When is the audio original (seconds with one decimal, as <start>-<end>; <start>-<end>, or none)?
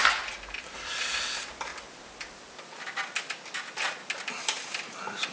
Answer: 0.0-5.3